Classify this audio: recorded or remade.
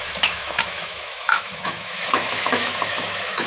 remade